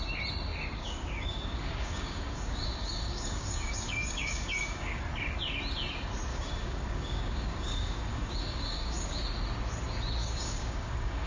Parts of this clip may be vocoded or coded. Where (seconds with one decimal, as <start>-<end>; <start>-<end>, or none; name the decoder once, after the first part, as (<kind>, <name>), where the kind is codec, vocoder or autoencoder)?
0.5-5.0 (codec, DAC); 6.3-9.2; 10.2-11.3